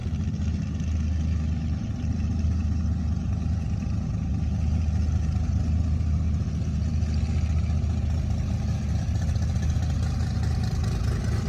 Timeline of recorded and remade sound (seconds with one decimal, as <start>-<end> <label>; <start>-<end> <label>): 0.0-11.5 recorded